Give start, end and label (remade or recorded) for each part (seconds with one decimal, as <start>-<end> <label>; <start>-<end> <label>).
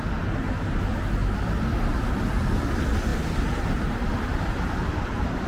0.0-5.5 recorded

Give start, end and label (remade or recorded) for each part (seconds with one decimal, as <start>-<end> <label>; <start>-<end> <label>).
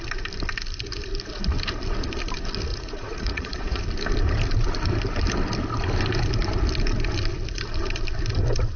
0.0-2.7 recorded; 2.7-3.8 remade; 3.8-8.8 recorded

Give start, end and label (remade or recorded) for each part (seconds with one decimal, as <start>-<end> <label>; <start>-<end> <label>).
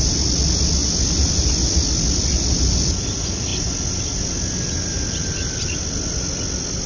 0.0-6.9 recorded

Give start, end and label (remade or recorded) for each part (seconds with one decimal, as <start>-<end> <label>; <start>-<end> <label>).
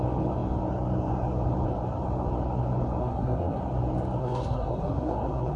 0.0-3.0 recorded; 3.0-3.6 remade; 3.6-4.2 recorded; 4.2-5.6 remade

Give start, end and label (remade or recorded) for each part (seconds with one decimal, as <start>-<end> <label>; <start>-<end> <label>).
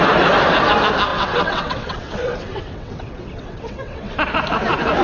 0.0-1.1 recorded; 1.1-4.1 remade; 4.1-5.0 recorded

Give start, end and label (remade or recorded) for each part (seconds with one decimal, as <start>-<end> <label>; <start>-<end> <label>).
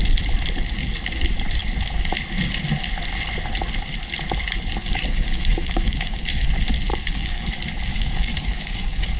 0.0-4.8 recorded; 4.8-6.5 remade; 6.5-6.9 recorded; 6.9-7.5 remade; 7.5-7.9 recorded; 7.9-9.2 remade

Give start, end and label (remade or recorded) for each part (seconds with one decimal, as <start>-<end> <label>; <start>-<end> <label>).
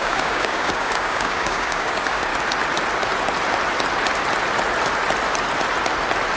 0.0-2.3 remade; 2.3-6.4 recorded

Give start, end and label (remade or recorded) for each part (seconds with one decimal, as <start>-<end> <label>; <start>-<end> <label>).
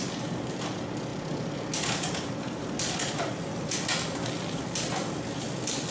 0.0-5.9 recorded